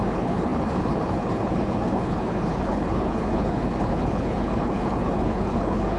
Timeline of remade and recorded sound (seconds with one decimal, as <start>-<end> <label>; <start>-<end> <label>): 0.0-6.0 remade